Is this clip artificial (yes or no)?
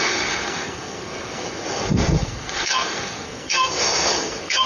yes